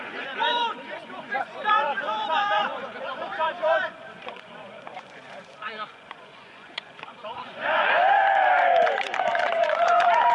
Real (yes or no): no